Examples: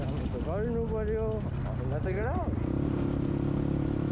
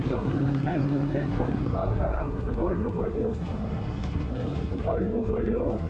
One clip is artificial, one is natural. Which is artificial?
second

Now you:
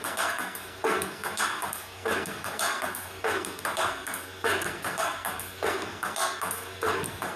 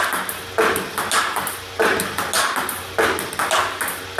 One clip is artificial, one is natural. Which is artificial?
first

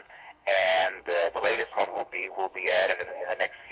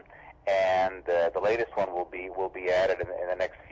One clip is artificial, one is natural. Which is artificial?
first